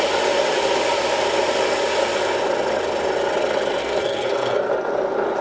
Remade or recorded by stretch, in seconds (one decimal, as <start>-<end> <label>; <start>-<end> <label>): 0.0-3.8 recorded; 3.8-4.7 remade; 4.7-5.4 recorded